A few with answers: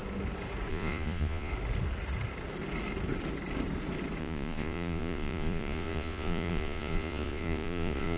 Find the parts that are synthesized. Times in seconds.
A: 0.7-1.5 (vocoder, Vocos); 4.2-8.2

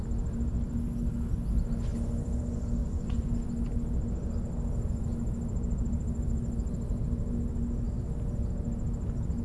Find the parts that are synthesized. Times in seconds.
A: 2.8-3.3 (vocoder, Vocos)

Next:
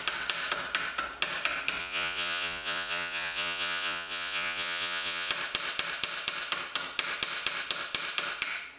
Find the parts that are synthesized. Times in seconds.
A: 1.8-5.3 (vocoder, Vocos)

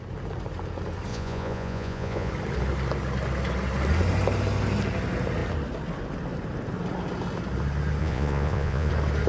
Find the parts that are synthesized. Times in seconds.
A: 1.1-2.3 (vocoder, Vocos); 8.0-8.9

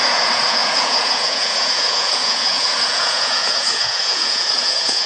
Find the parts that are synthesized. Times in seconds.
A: 0.0-5.1 (vocoder, Vocos)

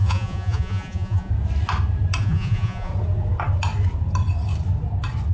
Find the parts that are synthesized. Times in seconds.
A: 0.0-1.3 (vocoder, Vocos); 2.2-2.9

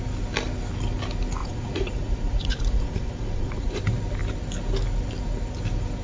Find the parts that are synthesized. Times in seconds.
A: 1.4-3.8 (vocoder, Vocos)